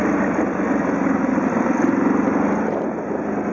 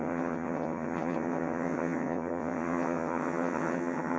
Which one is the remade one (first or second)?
second